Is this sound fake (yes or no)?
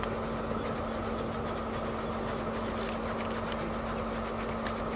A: no